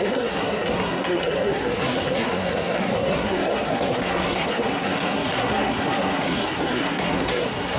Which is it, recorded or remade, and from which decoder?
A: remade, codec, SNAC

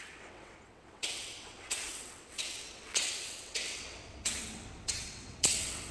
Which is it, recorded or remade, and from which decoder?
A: remade, vocoder, WaveNeXt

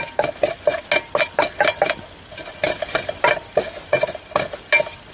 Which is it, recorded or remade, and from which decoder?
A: recorded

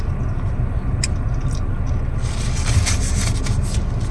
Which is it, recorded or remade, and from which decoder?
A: recorded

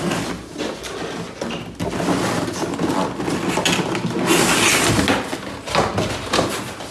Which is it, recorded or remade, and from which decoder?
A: recorded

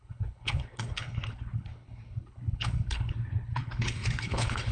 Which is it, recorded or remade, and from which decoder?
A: remade, codec, HILCodec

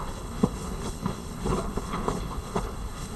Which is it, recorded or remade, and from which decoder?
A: remade, codec, HILCodec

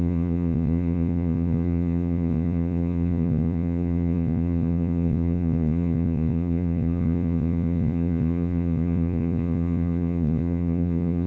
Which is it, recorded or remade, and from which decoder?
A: remade, vocoder, Vocos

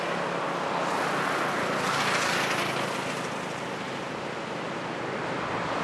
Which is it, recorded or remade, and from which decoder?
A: recorded